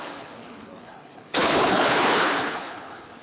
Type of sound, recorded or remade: remade